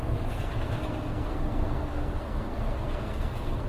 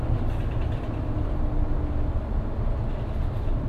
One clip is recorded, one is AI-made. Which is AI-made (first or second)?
first